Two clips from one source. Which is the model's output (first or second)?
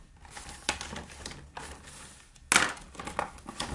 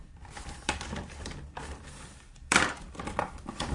second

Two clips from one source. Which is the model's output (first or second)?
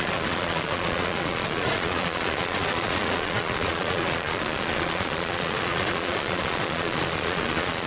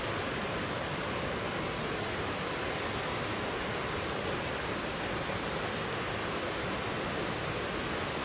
first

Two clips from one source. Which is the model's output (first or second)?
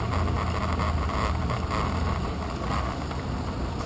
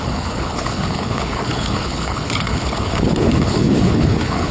second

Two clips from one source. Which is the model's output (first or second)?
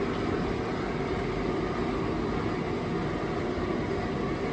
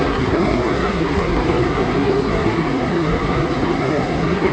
second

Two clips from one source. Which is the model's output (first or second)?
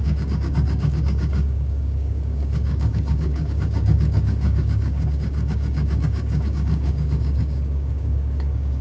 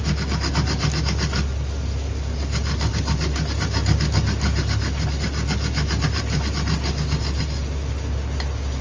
first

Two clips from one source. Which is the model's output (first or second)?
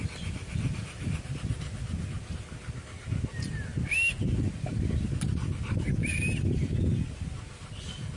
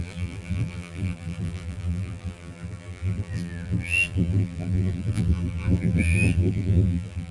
second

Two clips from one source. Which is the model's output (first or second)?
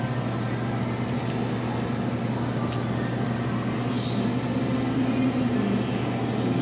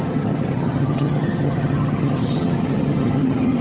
second